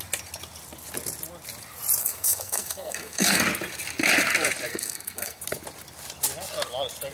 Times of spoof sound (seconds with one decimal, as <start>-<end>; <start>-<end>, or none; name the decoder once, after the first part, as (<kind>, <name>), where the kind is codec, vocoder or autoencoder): 2.0-3.4 (codec, SNAC); 4.7-5.4